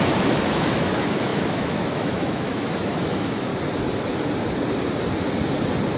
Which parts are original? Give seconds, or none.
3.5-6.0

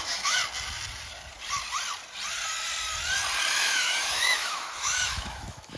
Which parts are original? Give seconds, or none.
0.4-3.5

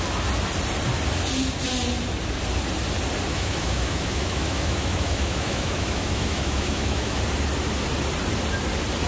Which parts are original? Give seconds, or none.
0.0-3.3; 7.2-9.1

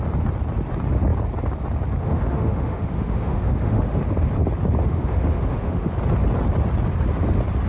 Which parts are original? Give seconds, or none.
0.0-2.0; 4.0-4.8; 5.9-7.7

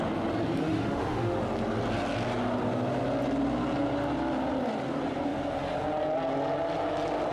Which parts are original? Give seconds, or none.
0.0-0.6; 1.4-7.3